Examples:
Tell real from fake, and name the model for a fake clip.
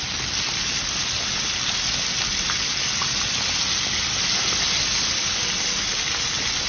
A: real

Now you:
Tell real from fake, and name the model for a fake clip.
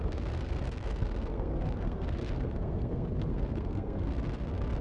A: fake, codec, SNAC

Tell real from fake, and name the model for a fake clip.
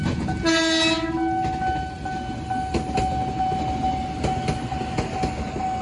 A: real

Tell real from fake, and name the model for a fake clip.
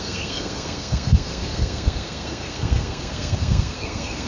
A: fake, codec, SNAC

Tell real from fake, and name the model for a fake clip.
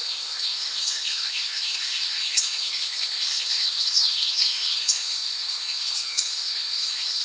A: fake, codec, SNAC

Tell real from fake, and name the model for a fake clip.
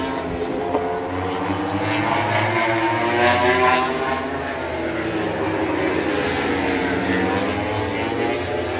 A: real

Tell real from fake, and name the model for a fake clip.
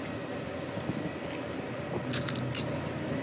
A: real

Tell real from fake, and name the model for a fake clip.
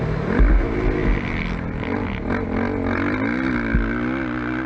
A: real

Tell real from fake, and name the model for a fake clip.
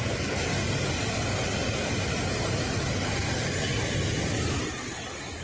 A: real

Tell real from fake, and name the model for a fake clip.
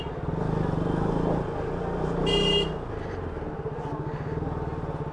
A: real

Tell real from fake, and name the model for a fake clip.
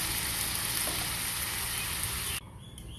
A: real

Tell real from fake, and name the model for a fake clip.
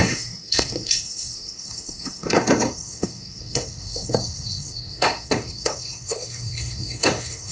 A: fake, codec, SNAC